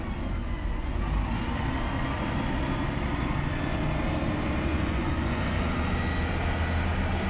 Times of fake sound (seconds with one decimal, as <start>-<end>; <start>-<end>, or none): 0.4-1.0; 4.7-5.6